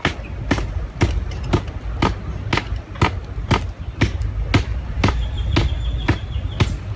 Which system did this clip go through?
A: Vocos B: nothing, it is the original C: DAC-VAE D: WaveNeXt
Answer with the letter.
B